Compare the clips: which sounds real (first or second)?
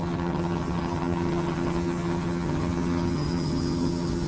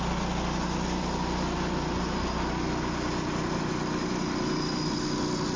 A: second